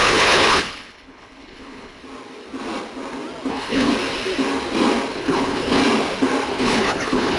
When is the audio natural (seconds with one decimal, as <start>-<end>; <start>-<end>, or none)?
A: 2.0-3.5; 3.9-5.1; 5.8-6.5